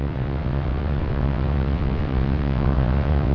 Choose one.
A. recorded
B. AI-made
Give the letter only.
B